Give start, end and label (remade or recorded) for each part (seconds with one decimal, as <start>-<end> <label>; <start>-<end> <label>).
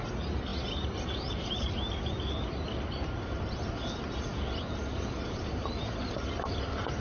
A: 0.0-0.5 recorded; 0.5-1.7 remade; 1.7-7.0 recorded